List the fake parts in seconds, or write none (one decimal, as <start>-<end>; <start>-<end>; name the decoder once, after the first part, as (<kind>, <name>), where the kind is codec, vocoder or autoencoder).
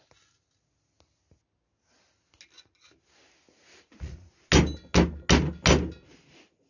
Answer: 3.6-4.3 (vocoder, Vocos)